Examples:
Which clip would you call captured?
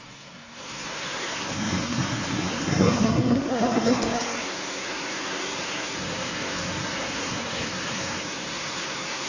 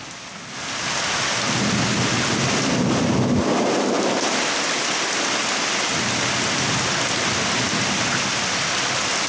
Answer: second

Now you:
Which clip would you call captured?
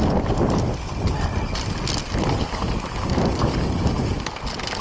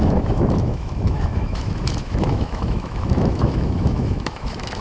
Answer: first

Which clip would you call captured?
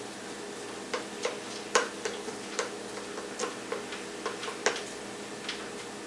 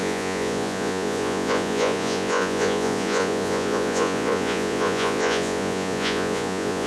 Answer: first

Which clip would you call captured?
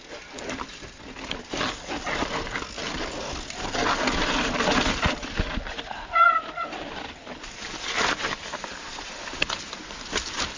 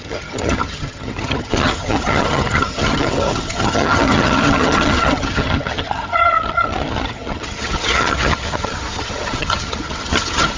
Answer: first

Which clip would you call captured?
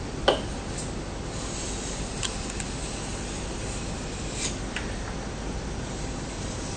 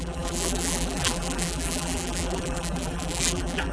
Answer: first